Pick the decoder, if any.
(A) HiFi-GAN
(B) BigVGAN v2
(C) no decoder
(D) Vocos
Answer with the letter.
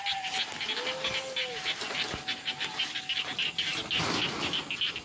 C